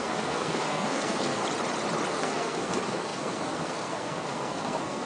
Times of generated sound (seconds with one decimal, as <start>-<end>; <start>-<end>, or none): 0.0-1.4; 2.1-5.1